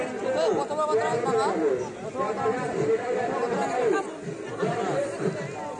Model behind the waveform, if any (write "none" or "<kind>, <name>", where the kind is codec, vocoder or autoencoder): none